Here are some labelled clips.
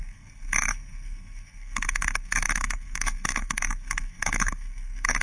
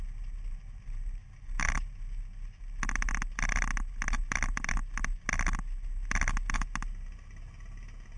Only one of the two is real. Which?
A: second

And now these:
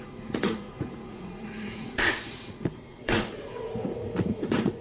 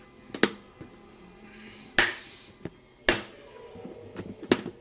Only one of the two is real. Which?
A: second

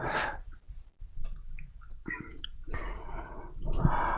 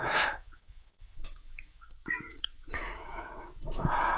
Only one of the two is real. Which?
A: first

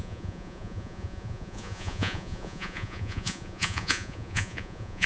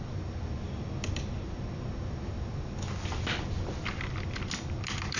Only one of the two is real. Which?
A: second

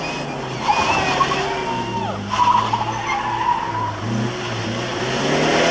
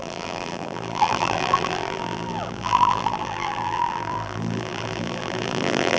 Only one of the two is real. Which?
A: first